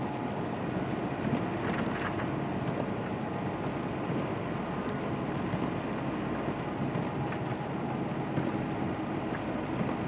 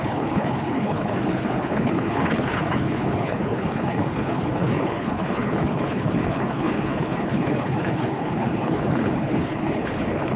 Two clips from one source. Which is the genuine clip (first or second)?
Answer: first